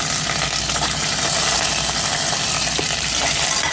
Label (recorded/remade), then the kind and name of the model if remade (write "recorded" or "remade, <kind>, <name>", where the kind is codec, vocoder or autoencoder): recorded